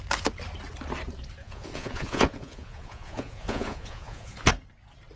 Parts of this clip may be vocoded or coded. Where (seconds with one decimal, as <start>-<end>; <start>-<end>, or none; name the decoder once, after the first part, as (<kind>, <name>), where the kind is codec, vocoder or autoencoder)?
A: 1.4-4.5 (vocoder, Vocos)

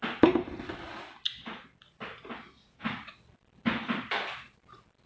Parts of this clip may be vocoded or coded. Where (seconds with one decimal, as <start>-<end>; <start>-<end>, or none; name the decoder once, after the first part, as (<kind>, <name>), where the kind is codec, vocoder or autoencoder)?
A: 2.5-3.1 (vocoder, Vocos)

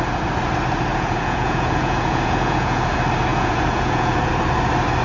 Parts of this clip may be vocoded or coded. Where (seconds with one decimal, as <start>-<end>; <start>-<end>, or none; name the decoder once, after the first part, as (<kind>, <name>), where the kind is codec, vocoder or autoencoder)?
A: 0.9-2.8 (vocoder, Vocos); 3.3-4.3